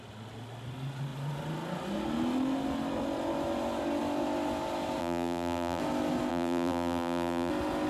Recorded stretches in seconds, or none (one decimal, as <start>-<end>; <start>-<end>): 0.0-5.0; 5.8-6.3; 7.5-7.9